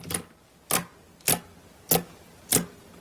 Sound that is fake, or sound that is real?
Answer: real